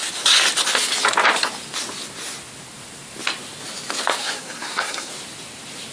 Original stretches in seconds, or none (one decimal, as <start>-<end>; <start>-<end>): 0.0-4.2; 5.1-5.9